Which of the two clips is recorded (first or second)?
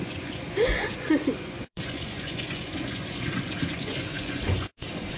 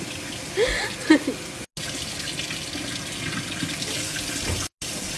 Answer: second